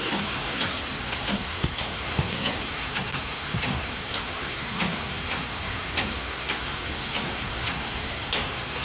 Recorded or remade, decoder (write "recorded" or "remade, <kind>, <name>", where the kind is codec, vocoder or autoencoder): remade, codec, SNAC